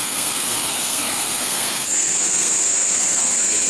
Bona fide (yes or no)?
no